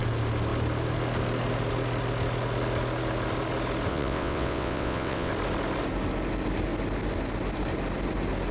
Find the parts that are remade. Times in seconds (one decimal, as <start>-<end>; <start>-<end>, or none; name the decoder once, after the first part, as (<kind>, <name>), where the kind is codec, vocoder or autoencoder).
3.9-5.3 (vocoder, WaveNeXt)